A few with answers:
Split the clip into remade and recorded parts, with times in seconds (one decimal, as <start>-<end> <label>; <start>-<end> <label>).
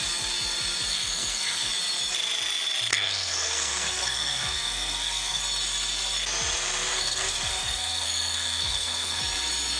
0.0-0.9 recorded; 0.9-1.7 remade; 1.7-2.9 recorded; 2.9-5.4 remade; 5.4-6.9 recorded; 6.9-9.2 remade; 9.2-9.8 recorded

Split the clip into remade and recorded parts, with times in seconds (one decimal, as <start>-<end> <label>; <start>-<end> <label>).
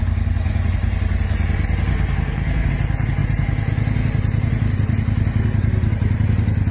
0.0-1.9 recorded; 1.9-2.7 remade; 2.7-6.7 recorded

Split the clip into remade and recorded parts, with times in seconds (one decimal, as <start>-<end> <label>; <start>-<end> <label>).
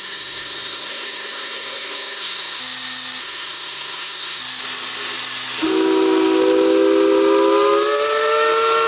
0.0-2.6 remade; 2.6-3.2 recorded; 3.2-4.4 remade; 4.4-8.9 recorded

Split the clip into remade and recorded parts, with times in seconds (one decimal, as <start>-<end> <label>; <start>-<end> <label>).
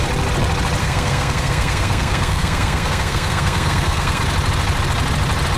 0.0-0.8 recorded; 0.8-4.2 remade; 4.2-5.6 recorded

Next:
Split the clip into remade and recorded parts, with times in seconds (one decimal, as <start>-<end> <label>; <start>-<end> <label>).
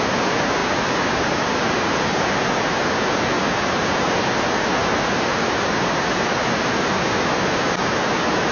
0.0-8.5 recorded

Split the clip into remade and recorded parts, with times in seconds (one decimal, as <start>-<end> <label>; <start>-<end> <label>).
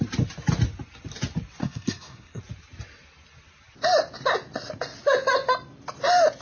0.0-1.6 recorded; 1.6-2.4 remade; 2.4-6.4 recorded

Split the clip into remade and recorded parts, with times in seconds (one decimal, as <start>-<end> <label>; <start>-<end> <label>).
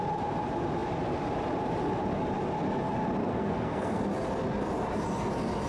0.0-3.2 recorded; 3.2-4.0 remade; 4.0-5.7 recorded